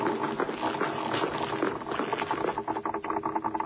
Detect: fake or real real